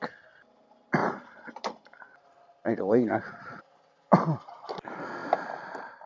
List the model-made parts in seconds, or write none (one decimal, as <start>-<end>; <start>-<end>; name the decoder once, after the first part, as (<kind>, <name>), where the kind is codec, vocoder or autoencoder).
1.0-3.6 (vocoder, BigVGAN v2); 5.2-6.1